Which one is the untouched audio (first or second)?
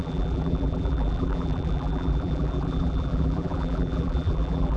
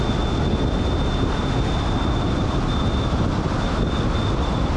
second